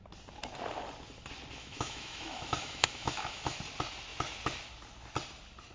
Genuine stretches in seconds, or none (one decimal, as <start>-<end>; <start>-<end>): 0.0-1.6; 3.6-5.7